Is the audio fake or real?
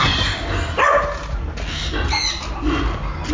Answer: real